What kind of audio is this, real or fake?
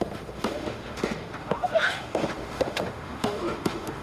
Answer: fake